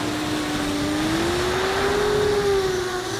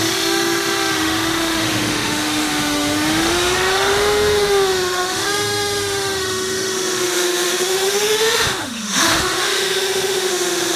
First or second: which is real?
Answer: first